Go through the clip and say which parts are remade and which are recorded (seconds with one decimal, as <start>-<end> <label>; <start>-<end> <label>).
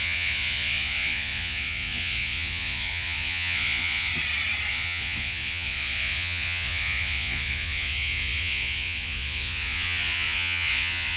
0.0-4.1 remade; 4.1-4.7 recorded; 4.7-11.2 remade